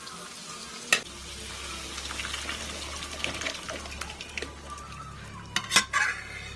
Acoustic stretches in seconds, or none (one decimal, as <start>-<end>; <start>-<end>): 0.0-6.6